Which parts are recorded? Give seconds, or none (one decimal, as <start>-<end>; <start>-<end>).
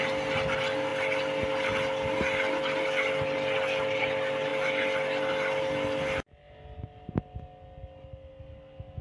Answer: 0.0-9.0